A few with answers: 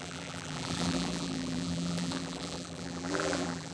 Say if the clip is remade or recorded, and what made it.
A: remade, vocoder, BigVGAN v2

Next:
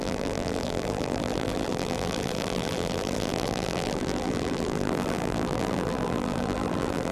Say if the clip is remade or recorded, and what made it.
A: remade, vocoder, BigVGAN v2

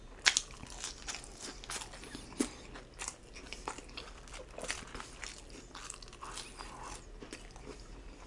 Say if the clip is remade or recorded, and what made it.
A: recorded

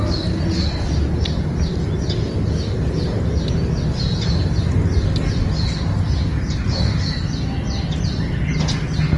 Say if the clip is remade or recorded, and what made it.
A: recorded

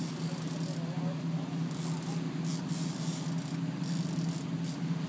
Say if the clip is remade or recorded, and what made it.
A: recorded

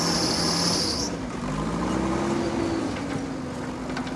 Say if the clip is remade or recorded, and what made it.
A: recorded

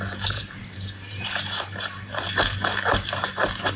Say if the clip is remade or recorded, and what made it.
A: remade, vocoder, BigVGAN v2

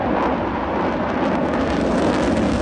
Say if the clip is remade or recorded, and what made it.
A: recorded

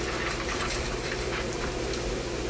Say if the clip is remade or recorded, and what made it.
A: remade, vocoder, BigVGAN v2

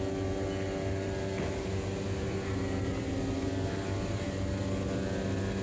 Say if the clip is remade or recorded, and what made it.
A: recorded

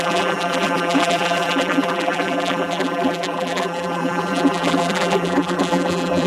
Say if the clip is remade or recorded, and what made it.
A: remade, vocoder, BigVGAN v2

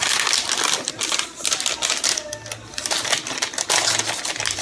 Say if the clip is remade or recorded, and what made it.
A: recorded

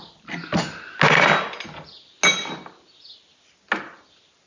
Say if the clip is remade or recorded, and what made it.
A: recorded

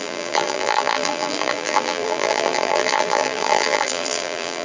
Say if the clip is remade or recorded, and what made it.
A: remade, vocoder, BigVGAN v2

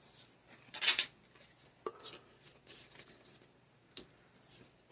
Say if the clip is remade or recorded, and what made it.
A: recorded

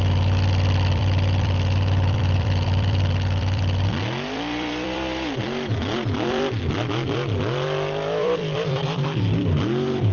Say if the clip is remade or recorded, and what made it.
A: remade, vocoder, BigVGAN v2